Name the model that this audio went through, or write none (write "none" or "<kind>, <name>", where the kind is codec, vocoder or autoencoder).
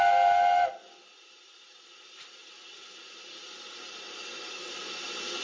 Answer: none